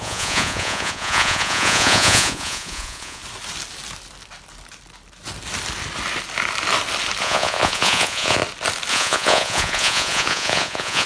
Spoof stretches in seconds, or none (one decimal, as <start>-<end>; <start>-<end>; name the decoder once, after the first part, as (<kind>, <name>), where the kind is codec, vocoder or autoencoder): 0.0-3.2 (vocoder, Vocos); 7.2-8.4; 8.9-11.1